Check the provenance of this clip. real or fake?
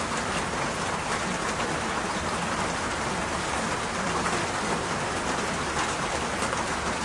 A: real